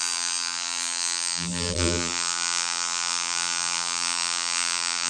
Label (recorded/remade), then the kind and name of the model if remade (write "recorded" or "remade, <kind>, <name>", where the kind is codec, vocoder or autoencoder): remade, vocoder, BigVGAN v2